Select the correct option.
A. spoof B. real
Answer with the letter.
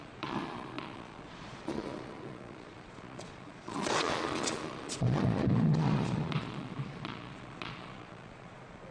A